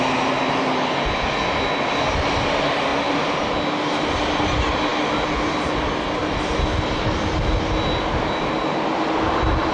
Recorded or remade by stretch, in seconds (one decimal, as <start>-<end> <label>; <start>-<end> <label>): 0.0-9.7 recorded